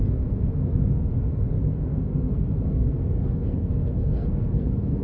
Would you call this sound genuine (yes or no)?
no